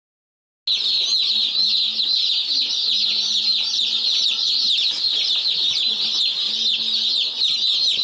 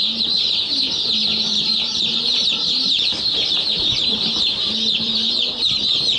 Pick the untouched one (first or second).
first